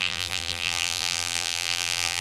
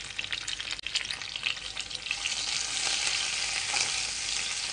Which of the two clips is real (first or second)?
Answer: second